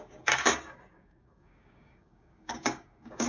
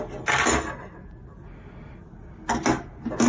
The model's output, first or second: first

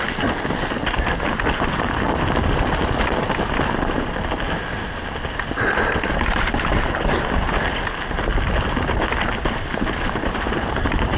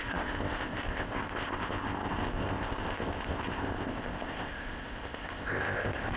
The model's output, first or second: second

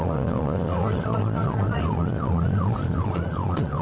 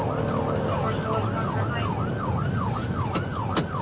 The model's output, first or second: first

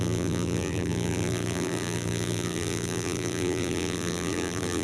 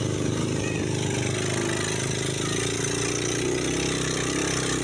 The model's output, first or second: first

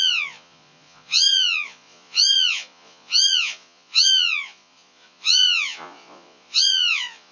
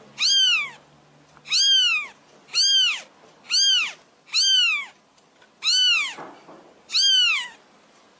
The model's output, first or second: first